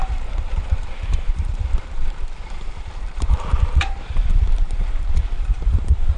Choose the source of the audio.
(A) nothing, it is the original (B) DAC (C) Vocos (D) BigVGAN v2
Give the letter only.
D